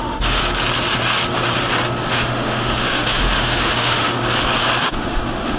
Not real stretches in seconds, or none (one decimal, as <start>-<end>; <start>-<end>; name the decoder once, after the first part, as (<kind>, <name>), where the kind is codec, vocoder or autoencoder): 0.0-0.4 (autoencoder, DAC-VAE); 2.1-4.1; 4.8-5.6